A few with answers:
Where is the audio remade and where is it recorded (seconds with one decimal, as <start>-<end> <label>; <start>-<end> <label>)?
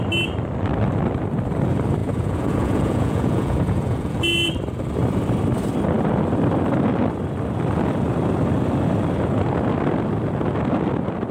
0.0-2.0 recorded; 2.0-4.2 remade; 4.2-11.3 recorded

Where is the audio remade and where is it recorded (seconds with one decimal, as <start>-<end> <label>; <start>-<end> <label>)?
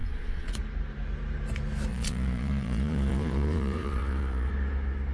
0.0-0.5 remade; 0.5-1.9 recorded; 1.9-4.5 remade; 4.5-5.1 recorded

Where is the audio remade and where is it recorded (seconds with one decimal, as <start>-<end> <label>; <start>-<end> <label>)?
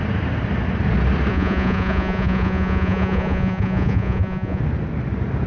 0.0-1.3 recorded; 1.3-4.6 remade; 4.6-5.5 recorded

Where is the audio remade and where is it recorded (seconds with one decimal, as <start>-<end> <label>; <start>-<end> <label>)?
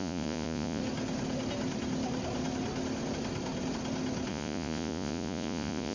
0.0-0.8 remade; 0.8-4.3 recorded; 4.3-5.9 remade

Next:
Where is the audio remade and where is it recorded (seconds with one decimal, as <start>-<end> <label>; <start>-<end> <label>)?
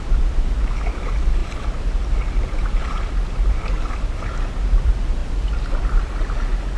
0.0-6.8 recorded